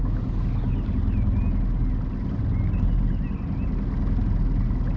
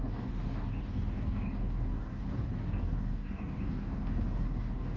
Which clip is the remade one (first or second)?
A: second